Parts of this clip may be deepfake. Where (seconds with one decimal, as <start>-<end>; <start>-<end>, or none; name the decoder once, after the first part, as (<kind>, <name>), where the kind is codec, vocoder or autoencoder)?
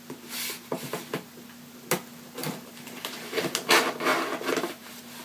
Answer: 2.4-3.4 (vocoder, BigVGAN v2)